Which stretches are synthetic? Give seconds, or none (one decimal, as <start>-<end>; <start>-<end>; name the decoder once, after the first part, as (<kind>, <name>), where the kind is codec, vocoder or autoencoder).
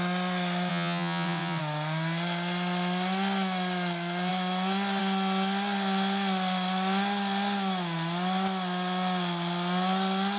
0.7-1.6 (vocoder, WaveNeXt)